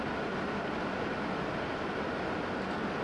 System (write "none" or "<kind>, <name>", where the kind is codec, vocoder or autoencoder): none